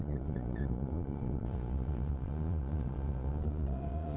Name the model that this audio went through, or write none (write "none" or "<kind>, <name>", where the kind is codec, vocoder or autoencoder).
vocoder, Vocos